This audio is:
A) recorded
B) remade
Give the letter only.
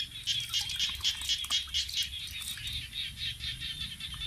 A